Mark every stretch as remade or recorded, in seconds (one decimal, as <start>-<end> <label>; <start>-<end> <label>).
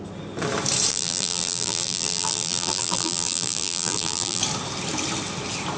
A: 0.0-0.9 recorded; 0.9-4.4 remade; 4.4-5.8 recorded